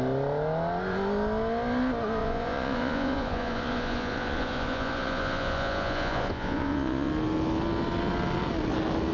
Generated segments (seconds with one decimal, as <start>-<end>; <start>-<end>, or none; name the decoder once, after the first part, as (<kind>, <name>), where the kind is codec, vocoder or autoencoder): 2.2-7.1 (vocoder, Vocos)